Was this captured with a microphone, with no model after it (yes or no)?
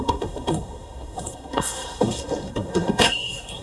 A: no